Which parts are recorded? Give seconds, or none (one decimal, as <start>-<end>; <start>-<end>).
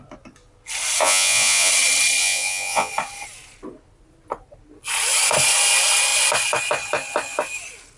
0.0-1.0; 1.7-2.2; 2.9-8.0